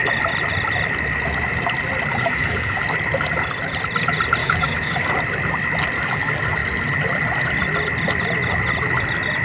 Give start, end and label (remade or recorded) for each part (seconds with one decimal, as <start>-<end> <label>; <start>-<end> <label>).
0.0-2.1 recorded; 2.1-2.8 remade; 2.8-4.4 recorded; 4.4-5.1 remade; 5.1-9.4 recorded